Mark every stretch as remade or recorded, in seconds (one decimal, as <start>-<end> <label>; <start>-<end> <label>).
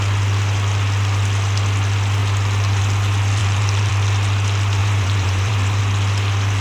0.0-3.4 recorded; 3.4-3.9 remade; 3.9-4.8 recorded; 4.8-5.8 remade; 5.8-6.6 recorded